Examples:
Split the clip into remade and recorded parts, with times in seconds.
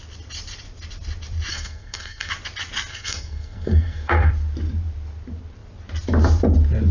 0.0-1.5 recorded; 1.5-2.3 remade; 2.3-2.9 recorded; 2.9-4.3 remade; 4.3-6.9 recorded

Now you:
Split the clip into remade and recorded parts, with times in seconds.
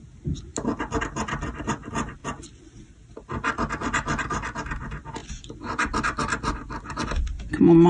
0.0-7.9 recorded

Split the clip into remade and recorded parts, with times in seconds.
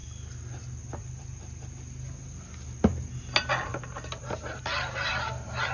0.0-5.7 recorded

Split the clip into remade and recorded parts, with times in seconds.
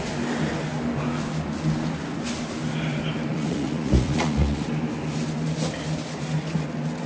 0.0-3.3 recorded; 3.3-4.7 remade; 4.7-7.1 recorded